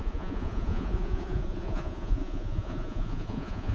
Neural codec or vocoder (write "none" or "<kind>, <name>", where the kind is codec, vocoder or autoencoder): vocoder, Vocos